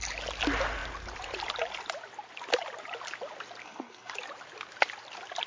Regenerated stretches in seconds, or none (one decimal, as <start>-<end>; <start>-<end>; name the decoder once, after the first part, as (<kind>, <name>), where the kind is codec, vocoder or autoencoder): 3.6-4.1 (codec, SNAC)